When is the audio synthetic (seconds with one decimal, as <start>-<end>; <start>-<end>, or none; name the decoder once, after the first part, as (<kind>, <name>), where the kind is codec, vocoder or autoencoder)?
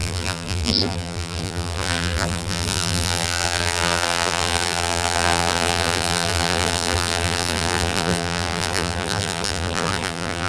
0.0-10.5 (vocoder, BigVGAN v2)